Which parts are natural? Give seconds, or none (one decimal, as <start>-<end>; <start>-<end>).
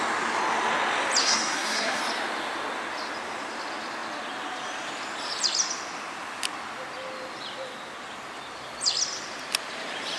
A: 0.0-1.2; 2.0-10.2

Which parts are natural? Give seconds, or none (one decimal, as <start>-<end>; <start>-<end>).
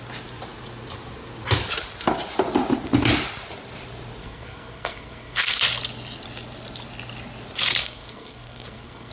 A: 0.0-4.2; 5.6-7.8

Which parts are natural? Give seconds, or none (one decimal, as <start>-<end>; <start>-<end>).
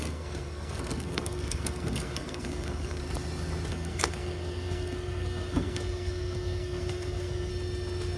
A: 3.0-3.7; 7.5-8.2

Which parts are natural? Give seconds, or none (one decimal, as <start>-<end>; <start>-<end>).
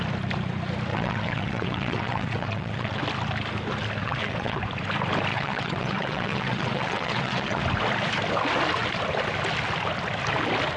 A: 0.0-0.9; 3.0-4.0; 4.6-5.3; 7.6-10.8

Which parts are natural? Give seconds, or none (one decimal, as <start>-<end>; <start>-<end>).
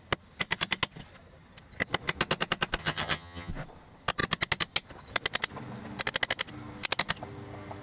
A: 0.0-2.8; 3.5-7.8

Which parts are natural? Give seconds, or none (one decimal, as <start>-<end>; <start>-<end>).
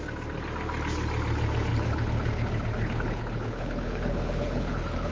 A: 0.0-1.7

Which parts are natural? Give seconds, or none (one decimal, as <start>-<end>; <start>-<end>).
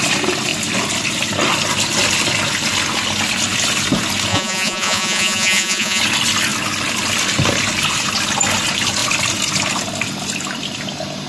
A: 0.0-4.3; 6.0-11.3